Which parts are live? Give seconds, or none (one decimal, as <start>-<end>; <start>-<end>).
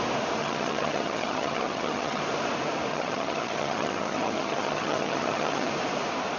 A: 0.0-0.4; 2.2-2.9; 5.7-6.4